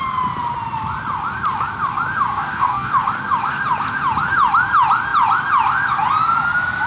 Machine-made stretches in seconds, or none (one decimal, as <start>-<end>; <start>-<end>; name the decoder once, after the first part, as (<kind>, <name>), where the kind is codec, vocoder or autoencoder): 2.3-2.9 (codec, DAC)